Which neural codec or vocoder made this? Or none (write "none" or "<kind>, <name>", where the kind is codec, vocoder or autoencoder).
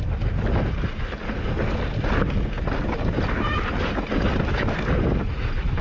none